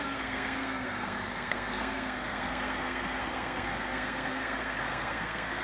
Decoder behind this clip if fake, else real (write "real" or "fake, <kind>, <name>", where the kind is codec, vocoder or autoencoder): fake, codec, SNAC